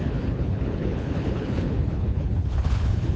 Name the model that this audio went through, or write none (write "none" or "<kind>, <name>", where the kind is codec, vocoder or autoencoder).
codec, HILCodec